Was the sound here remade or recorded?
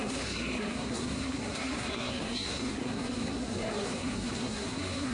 remade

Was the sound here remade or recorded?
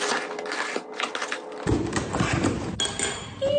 recorded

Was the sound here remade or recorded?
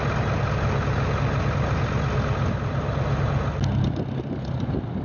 recorded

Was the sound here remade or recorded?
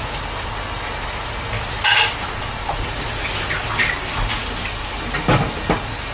recorded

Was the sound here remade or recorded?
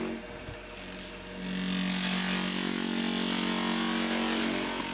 recorded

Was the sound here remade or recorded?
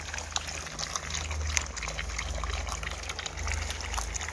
recorded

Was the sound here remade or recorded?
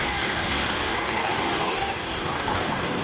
remade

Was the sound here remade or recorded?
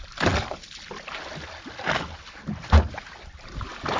recorded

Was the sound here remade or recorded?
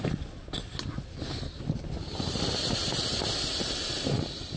recorded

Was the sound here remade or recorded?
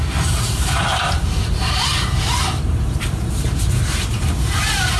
remade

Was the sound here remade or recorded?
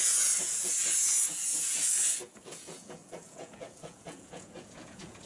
remade